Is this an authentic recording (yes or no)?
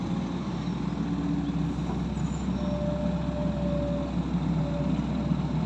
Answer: yes